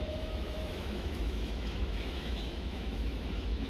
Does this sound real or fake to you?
fake